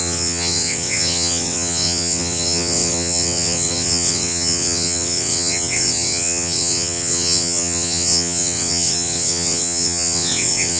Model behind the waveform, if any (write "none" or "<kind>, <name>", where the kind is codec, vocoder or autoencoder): vocoder, WaveNeXt